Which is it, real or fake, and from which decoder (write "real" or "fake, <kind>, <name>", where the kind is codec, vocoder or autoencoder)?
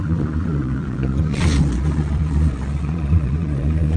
fake, vocoder, Vocos